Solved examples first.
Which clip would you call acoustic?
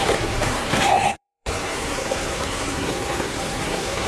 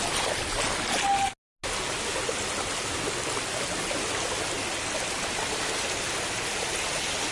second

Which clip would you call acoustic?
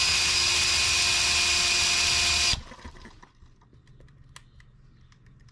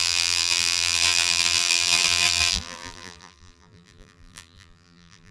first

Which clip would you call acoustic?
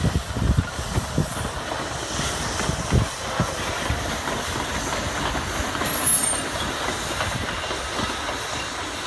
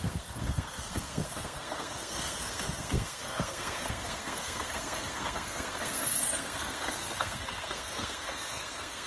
first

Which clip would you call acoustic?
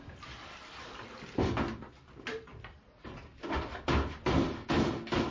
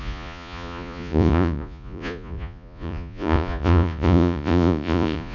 first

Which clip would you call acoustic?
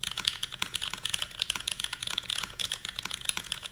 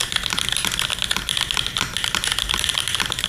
second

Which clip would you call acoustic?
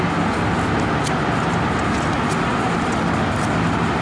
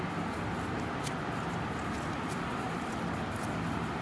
first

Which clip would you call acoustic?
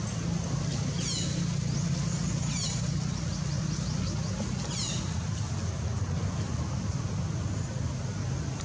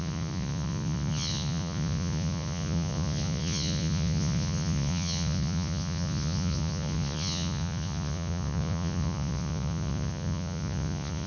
first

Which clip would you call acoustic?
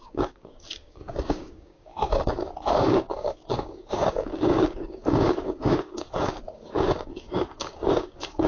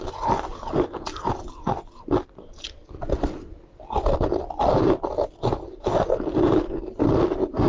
second